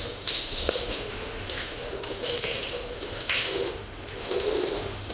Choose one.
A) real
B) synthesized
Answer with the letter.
B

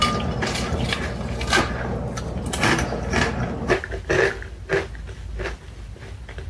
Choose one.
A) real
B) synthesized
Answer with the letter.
A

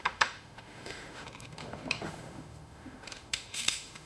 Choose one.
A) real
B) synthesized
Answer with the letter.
B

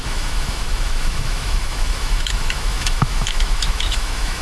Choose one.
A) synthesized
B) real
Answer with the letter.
A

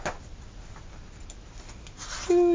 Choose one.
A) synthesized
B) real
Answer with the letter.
B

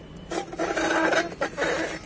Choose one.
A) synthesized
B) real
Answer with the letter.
B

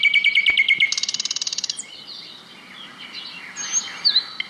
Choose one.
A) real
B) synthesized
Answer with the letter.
A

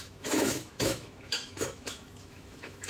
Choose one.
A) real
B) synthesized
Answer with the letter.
B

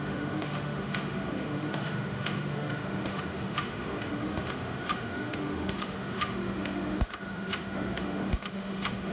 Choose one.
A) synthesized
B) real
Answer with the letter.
A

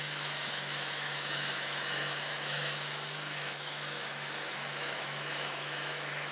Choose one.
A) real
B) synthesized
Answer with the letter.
B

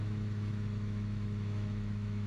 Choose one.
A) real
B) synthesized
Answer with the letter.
B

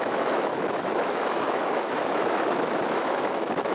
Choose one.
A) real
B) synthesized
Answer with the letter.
B